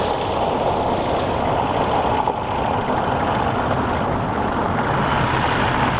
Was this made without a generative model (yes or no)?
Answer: yes